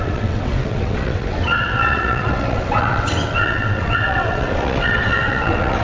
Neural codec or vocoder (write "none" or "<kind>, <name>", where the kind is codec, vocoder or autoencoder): vocoder, WaveNeXt